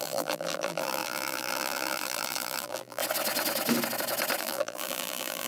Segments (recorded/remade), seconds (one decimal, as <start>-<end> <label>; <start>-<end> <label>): 0.0-3.0 remade; 3.0-4.4 recorded; 4.4-5.5 remade

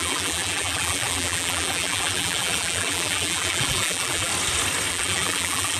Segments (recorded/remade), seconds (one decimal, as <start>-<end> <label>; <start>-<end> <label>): 0.0-4.3 remade; 4.3-4.9 recorded; 4.9-5.8 remade

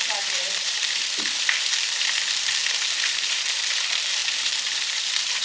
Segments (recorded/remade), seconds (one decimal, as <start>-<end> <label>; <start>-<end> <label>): 0.0-5.4 remade